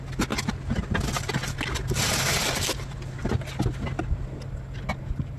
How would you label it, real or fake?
real